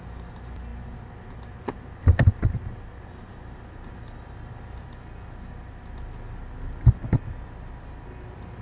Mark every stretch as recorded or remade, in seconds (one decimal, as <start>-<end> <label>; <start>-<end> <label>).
0.0-8.6 recorded